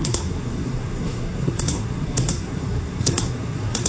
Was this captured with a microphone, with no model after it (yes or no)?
no